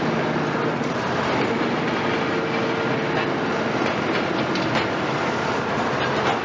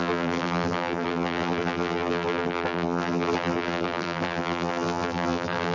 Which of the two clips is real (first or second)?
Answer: first